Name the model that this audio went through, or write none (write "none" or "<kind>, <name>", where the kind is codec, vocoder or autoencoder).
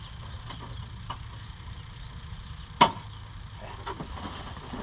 none